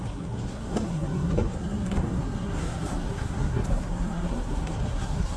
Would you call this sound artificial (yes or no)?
yes